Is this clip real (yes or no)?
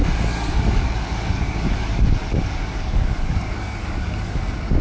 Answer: no